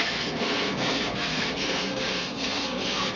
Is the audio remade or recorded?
remade